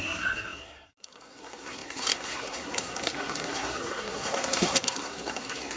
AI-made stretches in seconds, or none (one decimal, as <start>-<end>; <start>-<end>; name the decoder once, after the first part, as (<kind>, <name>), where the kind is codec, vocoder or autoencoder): 0.0-5.8 (codec, SNAC)